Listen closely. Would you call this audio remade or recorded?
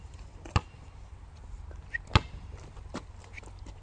recorded